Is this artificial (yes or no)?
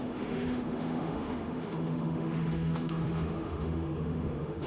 yes